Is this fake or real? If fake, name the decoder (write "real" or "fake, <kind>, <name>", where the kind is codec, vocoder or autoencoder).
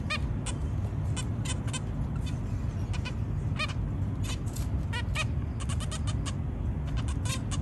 real